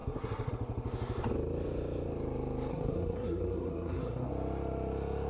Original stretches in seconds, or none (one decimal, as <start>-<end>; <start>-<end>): 0.5-2.7; 4.3-5.3